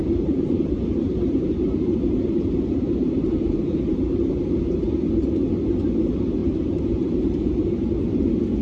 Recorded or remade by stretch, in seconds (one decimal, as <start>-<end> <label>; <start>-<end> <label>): 0.0-4.8 remade; 4.8-6.4 recorded; 6.4-7.7 remade; 7.7-8.6 recorded